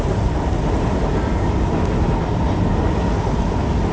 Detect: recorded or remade recorded